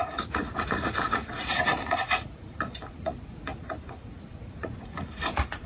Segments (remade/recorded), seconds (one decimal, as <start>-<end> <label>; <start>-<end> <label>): 0.0-5.7 remade